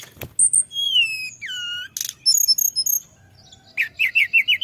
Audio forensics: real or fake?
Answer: real